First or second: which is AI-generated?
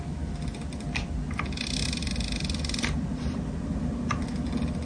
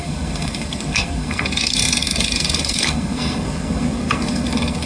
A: second